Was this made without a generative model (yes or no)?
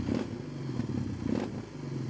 yes